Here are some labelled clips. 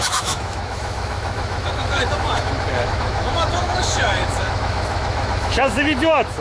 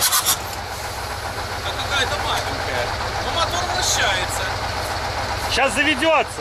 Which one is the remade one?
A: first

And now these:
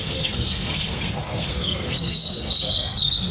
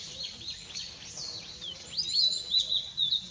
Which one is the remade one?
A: first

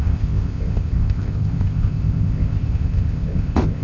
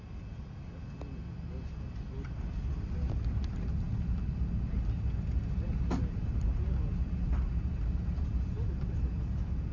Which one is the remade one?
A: first